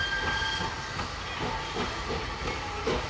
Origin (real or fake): real